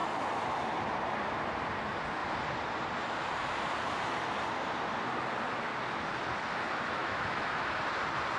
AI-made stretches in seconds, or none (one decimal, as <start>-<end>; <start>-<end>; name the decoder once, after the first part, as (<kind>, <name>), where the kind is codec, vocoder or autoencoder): 7.0-7.8 (autoencoder, DAC-VAE)